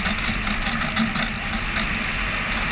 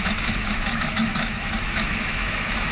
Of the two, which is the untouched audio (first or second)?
first